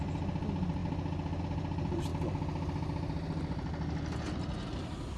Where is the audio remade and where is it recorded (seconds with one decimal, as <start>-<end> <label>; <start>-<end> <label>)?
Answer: 0.0-5.2 recorded